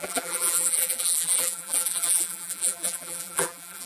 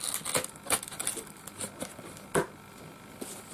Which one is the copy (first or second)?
first